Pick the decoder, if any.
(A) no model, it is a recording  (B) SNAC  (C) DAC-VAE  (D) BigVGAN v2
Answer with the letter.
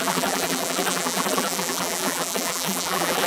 D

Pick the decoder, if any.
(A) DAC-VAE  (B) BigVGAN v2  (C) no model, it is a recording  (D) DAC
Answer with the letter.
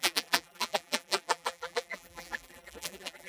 B